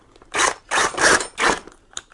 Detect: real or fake real